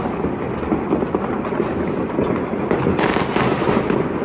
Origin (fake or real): real